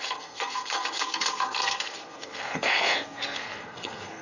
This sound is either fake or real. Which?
fake